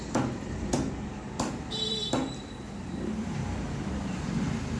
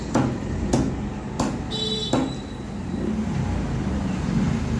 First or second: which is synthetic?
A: first